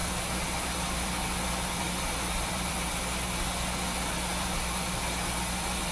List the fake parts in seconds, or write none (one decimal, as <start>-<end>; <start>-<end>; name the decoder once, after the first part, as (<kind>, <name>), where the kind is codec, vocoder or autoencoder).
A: 0.0-2.9 (vocoder, BigVGAN v2); 4.3-4.8